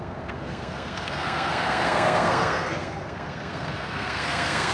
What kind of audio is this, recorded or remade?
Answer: remade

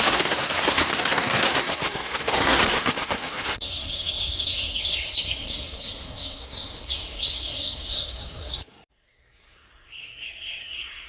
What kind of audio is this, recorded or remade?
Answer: remade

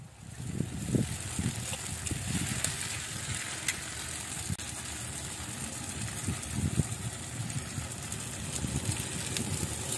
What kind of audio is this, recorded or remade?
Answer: recorded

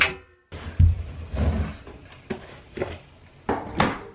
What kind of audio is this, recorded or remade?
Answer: recorded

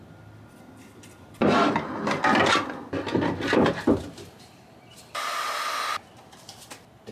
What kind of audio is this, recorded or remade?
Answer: recorded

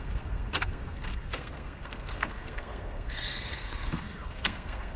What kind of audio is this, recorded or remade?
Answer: remade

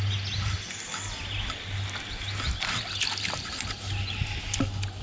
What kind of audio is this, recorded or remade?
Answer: recorded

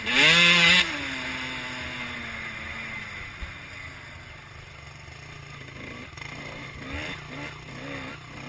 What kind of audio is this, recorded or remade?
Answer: recorded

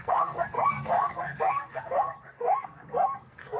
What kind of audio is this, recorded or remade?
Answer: remade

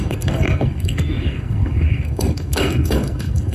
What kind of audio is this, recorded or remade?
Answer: remade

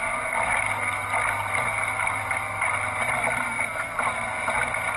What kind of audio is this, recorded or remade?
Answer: recorded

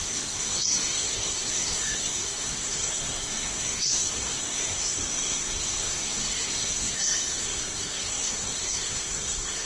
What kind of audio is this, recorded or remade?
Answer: remade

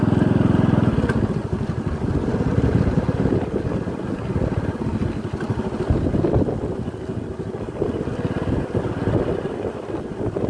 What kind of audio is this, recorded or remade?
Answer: recorded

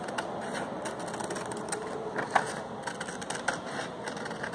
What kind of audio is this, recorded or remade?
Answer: recorded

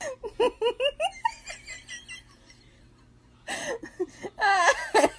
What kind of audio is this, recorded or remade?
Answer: recorded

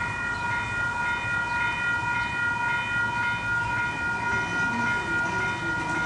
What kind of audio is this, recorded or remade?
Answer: recorded